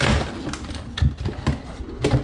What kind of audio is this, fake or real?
real